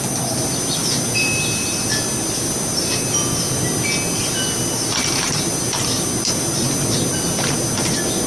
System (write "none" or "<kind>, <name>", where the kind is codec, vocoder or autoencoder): none